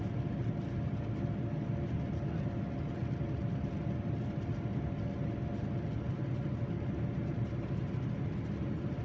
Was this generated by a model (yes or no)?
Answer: no